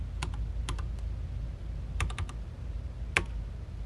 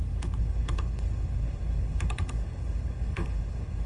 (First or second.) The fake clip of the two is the second